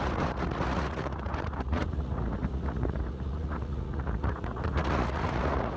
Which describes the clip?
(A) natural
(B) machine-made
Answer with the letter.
B